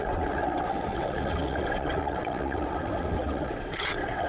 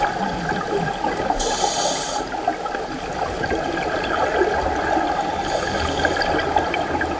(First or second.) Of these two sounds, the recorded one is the second